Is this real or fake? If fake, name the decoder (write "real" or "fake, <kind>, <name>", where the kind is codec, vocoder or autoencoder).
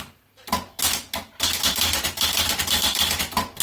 real